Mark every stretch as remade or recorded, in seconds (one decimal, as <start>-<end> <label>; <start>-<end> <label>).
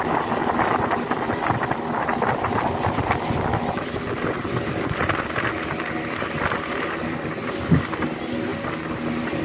0.0-0.4 remade; 0.4-1.1 recorded; 1.1-8.5 remade; 8.5-9.4 recorded